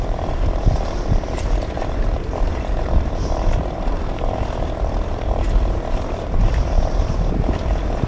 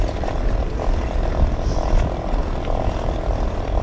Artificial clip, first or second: first